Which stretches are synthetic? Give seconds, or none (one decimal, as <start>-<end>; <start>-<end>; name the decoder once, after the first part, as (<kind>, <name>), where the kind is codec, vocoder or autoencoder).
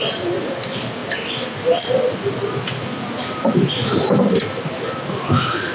none